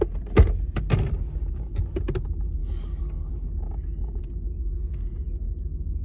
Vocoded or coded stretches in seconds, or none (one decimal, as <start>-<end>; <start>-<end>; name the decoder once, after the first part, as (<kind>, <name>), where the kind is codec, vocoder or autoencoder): 2.6-3.5 (codec, DAC); 4.6-5.5